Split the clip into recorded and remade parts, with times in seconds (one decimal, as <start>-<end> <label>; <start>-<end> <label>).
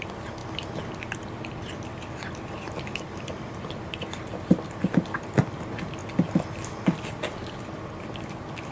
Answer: 0.0-0.4 remade; 0.4-2.5 recorded; 2.5-6.0 remade; 6.0-7.8 recorded; 7.8-8.7 remade